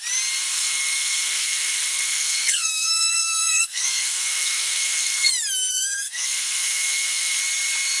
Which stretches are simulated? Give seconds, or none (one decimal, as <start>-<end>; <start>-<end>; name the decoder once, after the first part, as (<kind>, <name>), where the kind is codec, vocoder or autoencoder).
0.5-5.3 (codec, SNAC); 5.7-7.4